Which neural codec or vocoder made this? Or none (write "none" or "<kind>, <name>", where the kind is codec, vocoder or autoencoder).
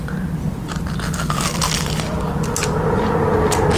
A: none